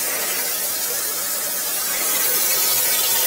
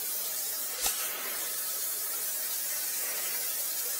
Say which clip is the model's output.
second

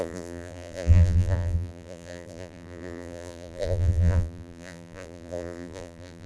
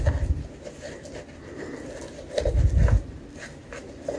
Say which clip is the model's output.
first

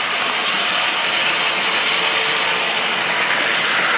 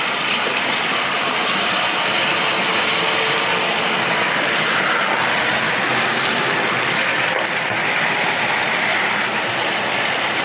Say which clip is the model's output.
second